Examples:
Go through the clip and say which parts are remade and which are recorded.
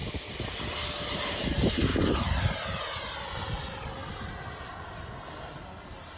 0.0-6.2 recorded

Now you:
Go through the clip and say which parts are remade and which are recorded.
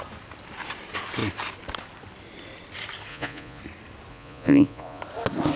0.0-3.1 recorded; 3.1-3.6 remade; 3.6-4.1 recorded; 4.1-5.0 remade; 5.0-5.6 recorded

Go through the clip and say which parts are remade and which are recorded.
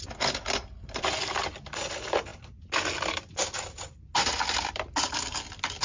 0.0-5.8 recorded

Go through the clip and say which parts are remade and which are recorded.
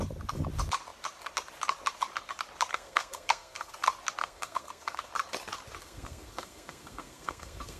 0.0-2.7 recorded; 2.7-3.7 remade; 3.7-4.2 recorded; 4.2-5.1 remade; 5.1-5.8 recorded; 5.8-7.8 remade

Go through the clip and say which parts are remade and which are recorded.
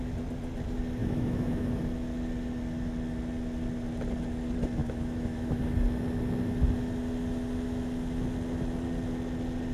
0.0-1.0 recorded; 1.0-1.8 remade; 1.8-4.8 recorded; 4.8-5.6 remade; 5.6-9.7 recorded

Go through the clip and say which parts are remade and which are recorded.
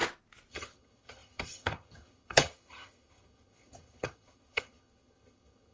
0.0-0.5 recorded; 0.5-5.7 remade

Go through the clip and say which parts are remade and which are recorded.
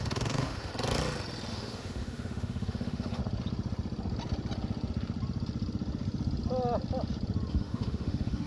0.0-0.7 remade; 0.7-1.5 recorded; 1.5-3.2 remade; 3.2-7.5 recorded; 7.5-8.5 remade